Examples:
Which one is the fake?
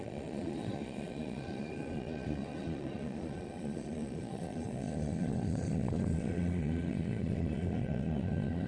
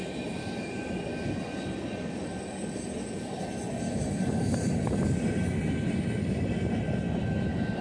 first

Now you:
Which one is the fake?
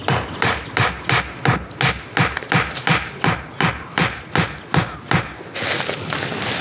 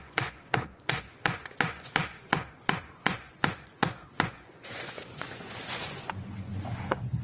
second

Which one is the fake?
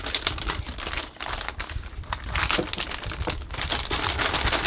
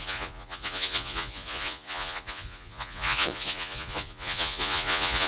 second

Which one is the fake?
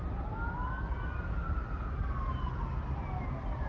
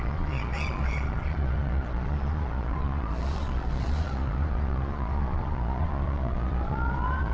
second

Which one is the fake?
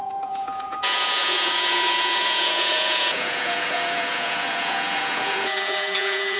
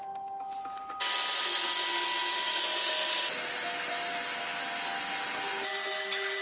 first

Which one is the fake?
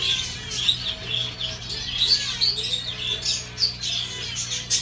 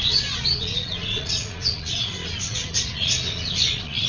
second